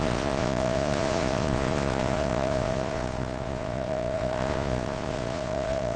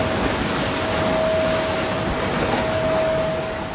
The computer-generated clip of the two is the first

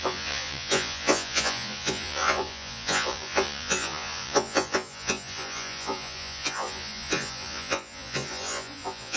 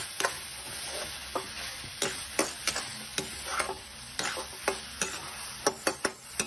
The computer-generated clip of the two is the first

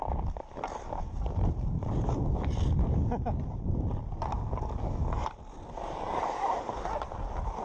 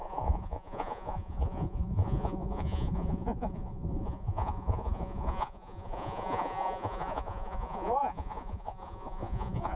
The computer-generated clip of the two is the second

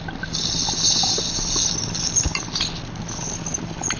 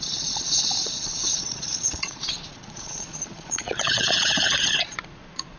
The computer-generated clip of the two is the second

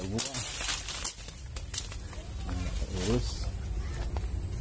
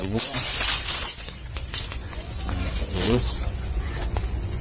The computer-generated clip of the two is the second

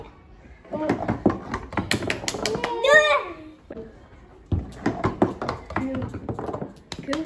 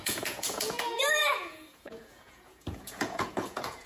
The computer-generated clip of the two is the second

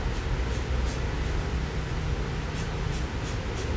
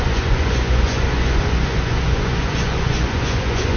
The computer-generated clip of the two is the second